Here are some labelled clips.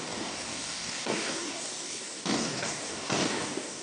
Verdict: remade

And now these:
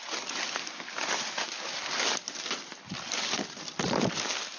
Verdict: recorded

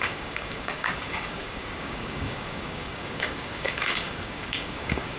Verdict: remade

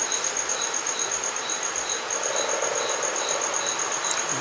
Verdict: recorded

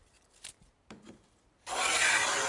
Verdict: recorded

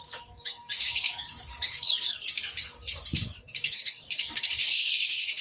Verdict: remade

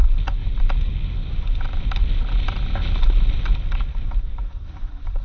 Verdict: recorded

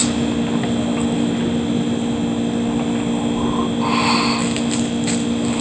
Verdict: recorded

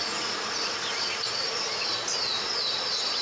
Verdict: recorded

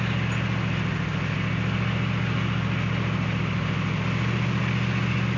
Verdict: recorded